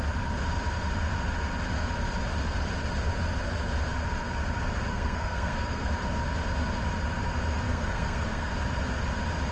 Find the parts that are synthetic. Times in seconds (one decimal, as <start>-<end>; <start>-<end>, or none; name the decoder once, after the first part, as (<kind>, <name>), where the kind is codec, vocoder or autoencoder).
4.9-5.9 (codec, SNAC); 7.6-8.5